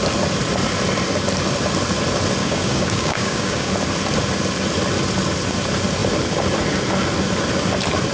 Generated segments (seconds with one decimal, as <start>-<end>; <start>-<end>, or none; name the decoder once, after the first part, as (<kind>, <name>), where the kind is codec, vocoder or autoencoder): 2.4-3.7 (codec, DAC)